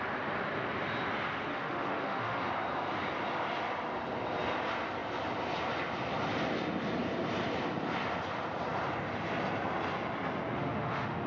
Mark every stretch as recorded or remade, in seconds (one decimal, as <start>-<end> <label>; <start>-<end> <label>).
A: 0.0-1.5 recorded; 1.5-2.4 remade; 2.4-10.5 recorded; 10.5-11.3 remade